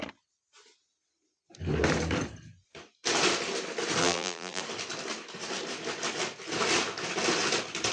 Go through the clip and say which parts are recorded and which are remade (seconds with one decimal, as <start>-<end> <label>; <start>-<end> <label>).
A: 0.0-4.0 recorded; 4.0-4.6 remade; 4.6-7.9 recorded